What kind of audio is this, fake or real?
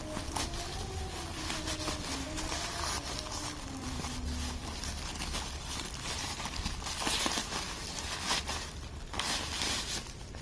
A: real